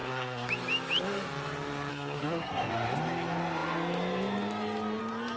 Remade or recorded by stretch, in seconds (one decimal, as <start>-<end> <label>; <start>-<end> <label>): 0.0-0.5 remade; 0.5-1.9 recorded; 1.9-2.7 remade; 2.7-5.4 recorded

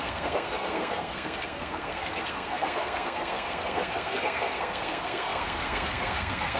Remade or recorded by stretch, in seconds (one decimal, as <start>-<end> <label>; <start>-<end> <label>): 0.0-6.6 remade

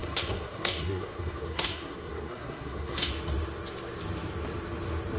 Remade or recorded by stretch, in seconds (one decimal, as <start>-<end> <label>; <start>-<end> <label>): 0.0-3.1 remade; 3.1-5.2 recorded

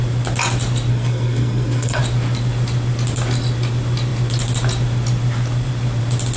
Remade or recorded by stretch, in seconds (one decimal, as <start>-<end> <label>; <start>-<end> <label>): 0.0-0.9 recorded; 0.9-2.0 remade; 2.0-6.4 recorded